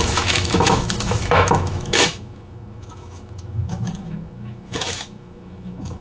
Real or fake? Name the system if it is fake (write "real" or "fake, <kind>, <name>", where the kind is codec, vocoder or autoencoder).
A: fake, autoencoder, DAC-VAE